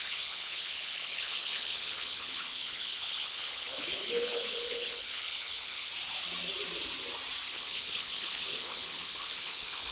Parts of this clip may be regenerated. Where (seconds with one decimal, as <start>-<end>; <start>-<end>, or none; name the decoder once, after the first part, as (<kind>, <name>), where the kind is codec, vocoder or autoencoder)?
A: 0.0-5.9 (codec, HILCodec); 7.5-9.9